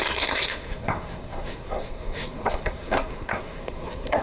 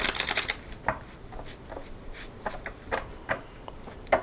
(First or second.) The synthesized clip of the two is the first